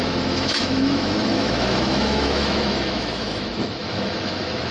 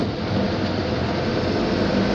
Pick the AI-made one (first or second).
first